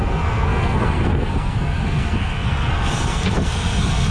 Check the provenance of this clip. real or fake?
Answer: fake